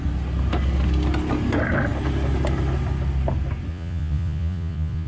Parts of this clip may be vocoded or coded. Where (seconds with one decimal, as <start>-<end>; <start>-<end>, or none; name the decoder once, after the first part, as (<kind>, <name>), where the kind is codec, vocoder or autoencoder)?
3.7-5.1 (vocoder, Vocos)